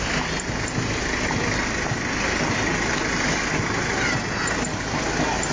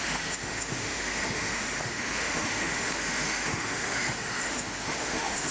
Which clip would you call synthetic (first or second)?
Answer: second